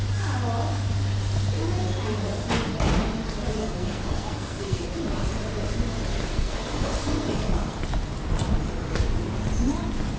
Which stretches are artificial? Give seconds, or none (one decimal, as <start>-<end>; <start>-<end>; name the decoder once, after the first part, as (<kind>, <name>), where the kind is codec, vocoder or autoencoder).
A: 3.6-4.8 (codec, SNAC); 6.3-7.8